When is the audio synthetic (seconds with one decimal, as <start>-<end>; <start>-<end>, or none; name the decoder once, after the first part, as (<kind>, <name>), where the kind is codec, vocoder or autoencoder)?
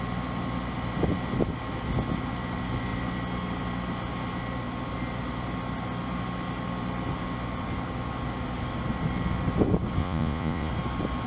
10.0-10.7 (vocoder, Vocos)